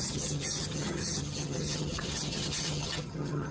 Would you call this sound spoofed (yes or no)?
yes